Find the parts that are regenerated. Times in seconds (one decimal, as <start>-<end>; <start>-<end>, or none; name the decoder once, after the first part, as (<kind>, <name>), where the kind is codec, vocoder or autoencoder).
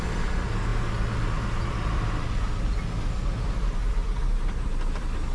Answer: none